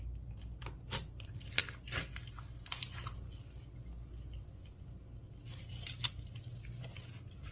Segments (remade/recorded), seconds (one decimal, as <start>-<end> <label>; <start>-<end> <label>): 0.0-7.5 recorded